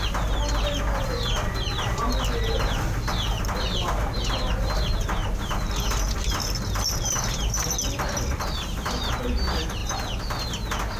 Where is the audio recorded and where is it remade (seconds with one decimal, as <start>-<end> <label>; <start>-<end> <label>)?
0.0-11.0 recorded